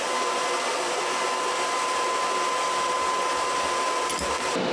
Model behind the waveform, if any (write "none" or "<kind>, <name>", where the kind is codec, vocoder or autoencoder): none